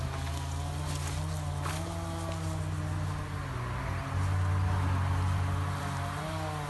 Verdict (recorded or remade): recorded